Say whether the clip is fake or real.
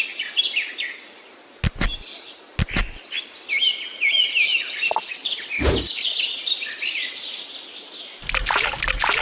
real